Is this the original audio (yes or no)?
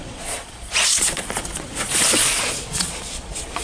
no